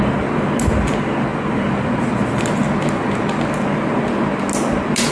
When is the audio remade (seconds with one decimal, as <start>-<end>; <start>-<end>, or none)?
none